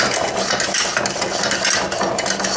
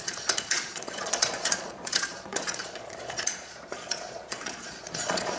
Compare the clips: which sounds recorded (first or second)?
first